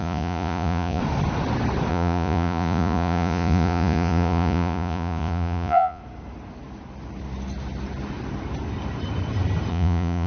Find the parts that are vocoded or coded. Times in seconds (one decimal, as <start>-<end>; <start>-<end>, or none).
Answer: 0.0-1.0; 1.9-6.0; 9.7-10.3